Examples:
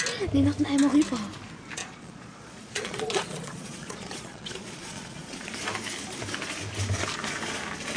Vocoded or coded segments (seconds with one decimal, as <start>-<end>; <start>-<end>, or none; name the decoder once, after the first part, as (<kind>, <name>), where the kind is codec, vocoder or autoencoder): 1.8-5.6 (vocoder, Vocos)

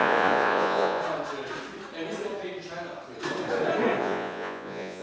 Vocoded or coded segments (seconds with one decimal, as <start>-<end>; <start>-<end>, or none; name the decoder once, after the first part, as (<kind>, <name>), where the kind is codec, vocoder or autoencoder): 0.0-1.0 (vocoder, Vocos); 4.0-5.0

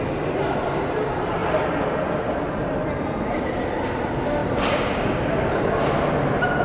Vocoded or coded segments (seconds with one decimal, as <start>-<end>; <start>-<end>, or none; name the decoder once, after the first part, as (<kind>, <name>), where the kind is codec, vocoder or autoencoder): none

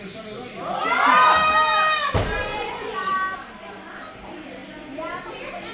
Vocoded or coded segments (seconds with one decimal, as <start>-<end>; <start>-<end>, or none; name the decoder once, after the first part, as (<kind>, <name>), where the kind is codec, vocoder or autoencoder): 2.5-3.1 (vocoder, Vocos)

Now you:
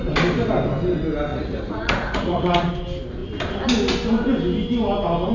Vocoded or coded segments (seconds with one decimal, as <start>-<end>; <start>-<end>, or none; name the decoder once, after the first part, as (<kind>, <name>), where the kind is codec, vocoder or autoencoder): 1.3-2.7 (vocoder, Vocos)

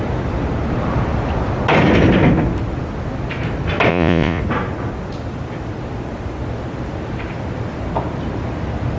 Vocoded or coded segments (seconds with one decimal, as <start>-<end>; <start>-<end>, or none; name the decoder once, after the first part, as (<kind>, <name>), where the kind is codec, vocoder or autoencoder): 3.9-4.4 (vocoder, Vocos)

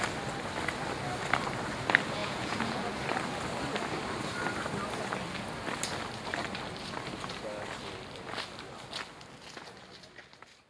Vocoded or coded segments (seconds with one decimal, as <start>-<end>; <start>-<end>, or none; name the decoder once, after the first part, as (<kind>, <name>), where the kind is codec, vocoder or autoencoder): 2.2-2.9 (vocoder, Vocos)

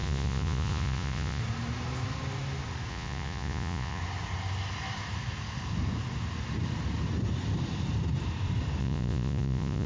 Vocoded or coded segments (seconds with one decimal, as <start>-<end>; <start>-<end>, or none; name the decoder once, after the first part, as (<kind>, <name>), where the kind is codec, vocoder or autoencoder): 0.0-1.4 (vocoder, Vocos); 2.9-4.0; 8.8-9.9